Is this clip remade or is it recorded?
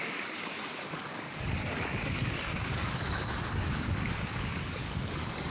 remade